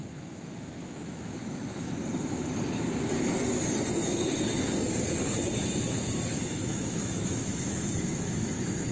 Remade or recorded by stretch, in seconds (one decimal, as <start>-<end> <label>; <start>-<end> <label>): 0.0-2.0 remade; 2.0-6.3 recorded; 6.3-8.9 remade

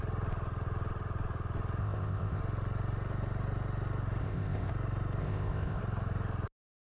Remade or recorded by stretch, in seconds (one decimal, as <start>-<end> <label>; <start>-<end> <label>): 0.0-1.8 recorded; 1.8-2.4 remade; 2.4-4.2 recorded; 4.2-4.7 remade; 4.7-5.2 recorded; 5.2-5.8 remade; 5.8-6.8 recorded

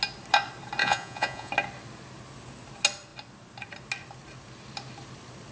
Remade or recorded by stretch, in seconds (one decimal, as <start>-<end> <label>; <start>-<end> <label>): 0.0-0.8 recorded; 0.8-1.5 remade; 1.5-5.5 recorded

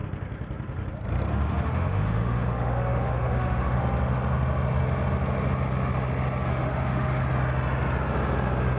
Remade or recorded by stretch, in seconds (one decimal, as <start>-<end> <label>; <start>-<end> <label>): 0.0-1.3 recorded; 1.3-3.8 remade; 3.8-6.5 recorded; 6.5-7.2 remade; 7.2-8.8 recorded

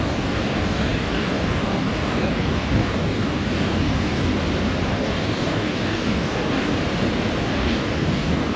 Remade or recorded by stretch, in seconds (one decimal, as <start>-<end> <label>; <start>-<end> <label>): 0.0-4.3 remade; 4.3-4.9 recorded; 4.9-6.7 remade; 6.7-7.4 recorded; 7.4-8.6 remade

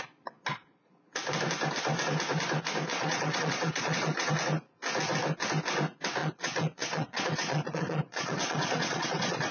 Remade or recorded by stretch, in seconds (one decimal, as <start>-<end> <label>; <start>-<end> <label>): 0.0-2.9 recorded; 2.9-4.3 remade; 4.3-6.2 recorded; 6.2-9.5 remade

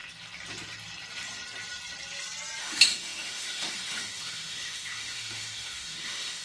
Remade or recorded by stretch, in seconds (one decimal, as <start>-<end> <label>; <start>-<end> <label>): 0.0-2.6 recorded; 2.6-6.4 remade